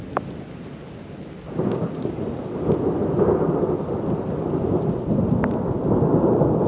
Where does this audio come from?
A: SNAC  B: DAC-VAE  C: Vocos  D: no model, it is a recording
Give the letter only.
D